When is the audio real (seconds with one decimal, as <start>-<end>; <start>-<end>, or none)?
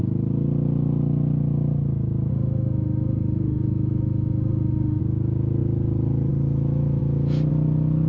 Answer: 0.0-2.3; 5.0-8.1